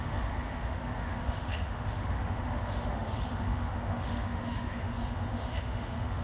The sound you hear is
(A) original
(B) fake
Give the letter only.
B